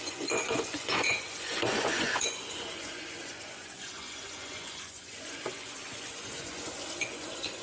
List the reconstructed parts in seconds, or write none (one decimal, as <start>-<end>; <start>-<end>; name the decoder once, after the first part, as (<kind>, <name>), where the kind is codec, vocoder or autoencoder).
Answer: 0.0-7.6 (vocoder, Vocos)

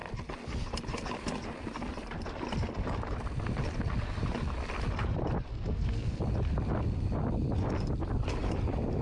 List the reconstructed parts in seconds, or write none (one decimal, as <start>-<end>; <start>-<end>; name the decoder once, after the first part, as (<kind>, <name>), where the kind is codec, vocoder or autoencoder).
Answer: 5.5-6.2 (codec, SNAC)